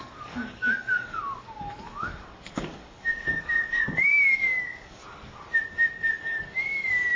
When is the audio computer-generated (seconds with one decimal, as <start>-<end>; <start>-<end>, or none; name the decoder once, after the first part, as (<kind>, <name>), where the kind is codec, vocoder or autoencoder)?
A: 0.0-5.0 (codec, DAC); 6.1-7.2